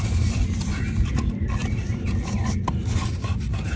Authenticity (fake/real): real